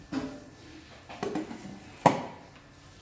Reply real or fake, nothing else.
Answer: real